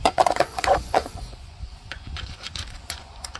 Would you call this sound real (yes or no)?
no